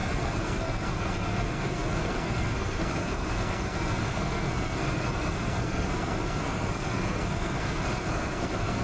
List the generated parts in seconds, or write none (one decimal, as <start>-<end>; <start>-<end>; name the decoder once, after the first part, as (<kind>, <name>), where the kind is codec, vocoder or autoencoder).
0.0-8.8 (codec, SNAC)